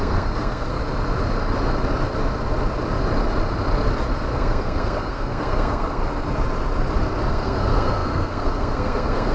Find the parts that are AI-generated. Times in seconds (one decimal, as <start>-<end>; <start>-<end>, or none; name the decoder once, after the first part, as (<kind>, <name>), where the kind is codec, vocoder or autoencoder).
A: 0.0-0.8 (codec, SNAC); 4.3-6.0; 7.3-9.3